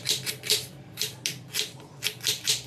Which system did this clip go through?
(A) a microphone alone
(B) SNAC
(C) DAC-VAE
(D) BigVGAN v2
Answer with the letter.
A